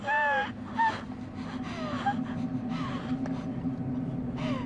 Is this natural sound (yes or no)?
yes